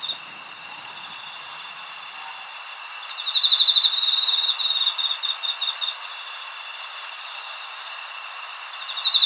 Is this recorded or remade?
recorded